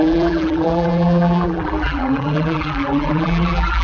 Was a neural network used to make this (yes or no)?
yes